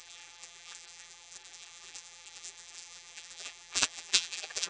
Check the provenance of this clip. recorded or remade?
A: remade